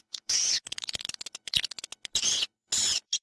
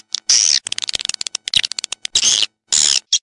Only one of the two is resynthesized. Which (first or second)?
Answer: first